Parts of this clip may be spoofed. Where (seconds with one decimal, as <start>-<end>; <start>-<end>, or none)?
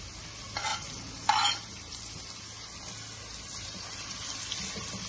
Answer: none